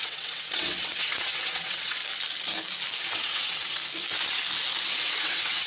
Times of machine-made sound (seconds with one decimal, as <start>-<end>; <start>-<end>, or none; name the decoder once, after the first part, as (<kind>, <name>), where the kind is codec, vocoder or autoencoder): 0.0-2.0 (vocoder, WaveNeXt); 3.0-3.8; 4.8-5.7